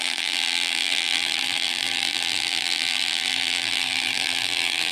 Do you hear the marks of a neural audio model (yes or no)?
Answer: yes